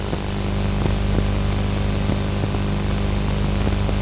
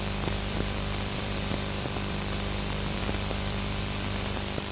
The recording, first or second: first